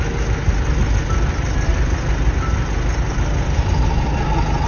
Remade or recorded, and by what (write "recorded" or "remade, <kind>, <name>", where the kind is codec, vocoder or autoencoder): recorded